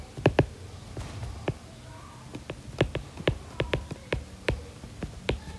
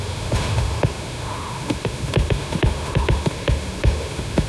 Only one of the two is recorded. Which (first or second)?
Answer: first